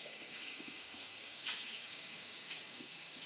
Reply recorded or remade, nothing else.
remade